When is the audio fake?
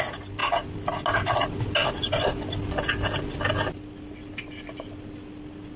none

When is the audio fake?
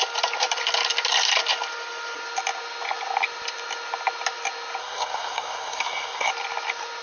4.8-6.3 (codec, SNAC)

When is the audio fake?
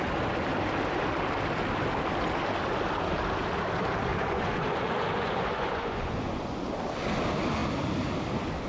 4.1-6.7 (vocoder, Vocos)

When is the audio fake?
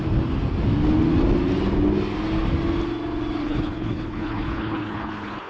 3.4-5.5 (codec, HILCodec)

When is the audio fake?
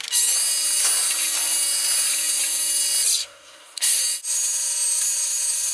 3.2-4.0 (codec, SNAC)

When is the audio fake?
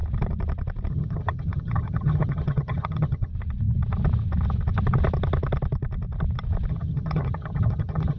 0.9-3.3 (vocoder, HiFi-GAN); 6.7-8.2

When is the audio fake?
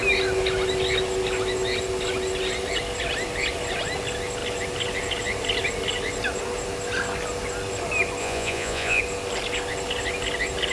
8.2-9.0 (vocoder, Vocos)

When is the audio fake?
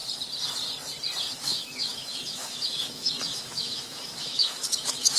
1.2-5.2 (autoencoder, DAC-VAE)